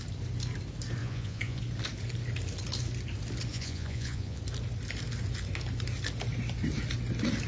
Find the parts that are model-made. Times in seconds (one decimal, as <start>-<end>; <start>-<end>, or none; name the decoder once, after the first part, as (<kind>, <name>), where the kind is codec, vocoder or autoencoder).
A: 1.0-1.6 (vocoder, Vocos); 3.5-4.4